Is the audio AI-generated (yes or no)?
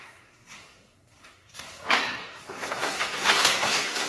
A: yes